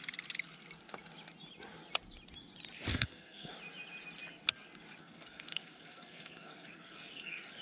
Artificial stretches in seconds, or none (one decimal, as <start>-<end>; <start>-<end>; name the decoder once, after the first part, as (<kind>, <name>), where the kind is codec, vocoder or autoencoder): 2.9-3.5 (codec, SNAC); 5.0-7.6